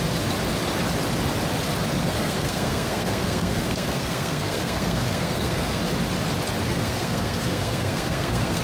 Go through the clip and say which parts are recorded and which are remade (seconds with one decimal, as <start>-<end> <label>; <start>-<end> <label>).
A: 0.0-2.0 recorded; 2.0-5.8 remade; 5.8-6.7 recorded; 6.7-8.6 remade